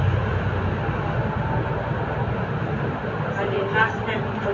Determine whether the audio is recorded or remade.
recorded